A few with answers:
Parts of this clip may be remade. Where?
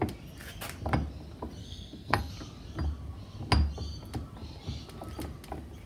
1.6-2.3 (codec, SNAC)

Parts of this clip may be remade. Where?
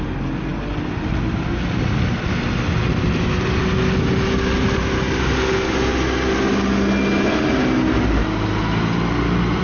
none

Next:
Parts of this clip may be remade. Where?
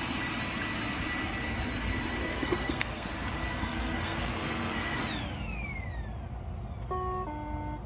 2.3-3.1 (codec, SNAC); 3.6-5.0